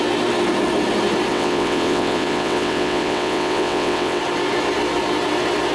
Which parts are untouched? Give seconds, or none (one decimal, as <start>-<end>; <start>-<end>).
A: 0.0-1.3; 4.2-5.7